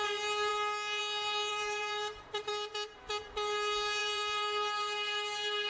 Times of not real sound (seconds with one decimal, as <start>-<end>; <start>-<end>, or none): 1.5-2.5; 4.0-5.7